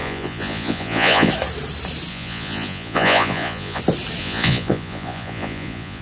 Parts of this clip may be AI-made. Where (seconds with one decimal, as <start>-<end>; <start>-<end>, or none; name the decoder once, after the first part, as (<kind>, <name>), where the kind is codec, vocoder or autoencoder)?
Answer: 0.0-1.3 (vocoder, Vocos); 2.1-3.8; 4.2-6.0